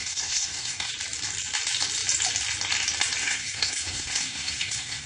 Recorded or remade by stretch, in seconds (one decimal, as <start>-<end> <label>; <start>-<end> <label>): 0.0-0.9 remade; 0.9-3.2 recorded; 3.2-5.1 remade